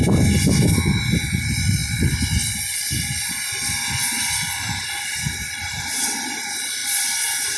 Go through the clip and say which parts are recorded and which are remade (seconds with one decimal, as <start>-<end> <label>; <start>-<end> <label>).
0.0-7.6 recorded